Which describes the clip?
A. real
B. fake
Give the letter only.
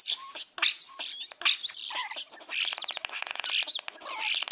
A